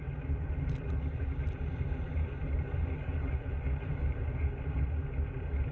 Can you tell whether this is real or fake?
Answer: fake